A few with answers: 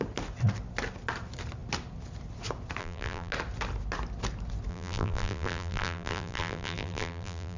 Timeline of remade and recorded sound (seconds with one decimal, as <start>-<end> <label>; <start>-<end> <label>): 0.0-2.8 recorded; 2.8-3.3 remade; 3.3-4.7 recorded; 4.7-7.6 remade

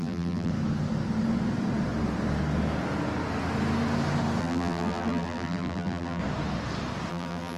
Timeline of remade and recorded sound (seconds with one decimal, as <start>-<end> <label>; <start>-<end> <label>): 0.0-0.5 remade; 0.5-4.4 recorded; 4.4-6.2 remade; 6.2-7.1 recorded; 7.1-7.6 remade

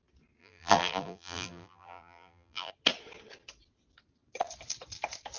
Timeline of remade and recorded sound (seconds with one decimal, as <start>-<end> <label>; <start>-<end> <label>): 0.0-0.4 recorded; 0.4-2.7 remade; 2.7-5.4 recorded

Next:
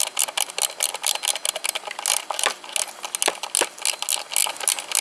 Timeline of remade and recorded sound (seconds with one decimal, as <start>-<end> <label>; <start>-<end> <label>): 0.0-5.0 recorded